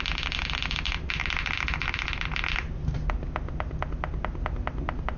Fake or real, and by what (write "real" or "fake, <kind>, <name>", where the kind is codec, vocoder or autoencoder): real